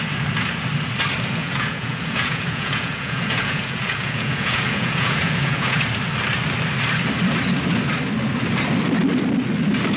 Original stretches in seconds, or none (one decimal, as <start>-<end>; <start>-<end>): 0.0-1.4; 5.8-10.0